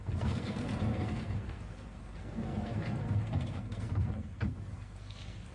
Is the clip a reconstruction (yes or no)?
yes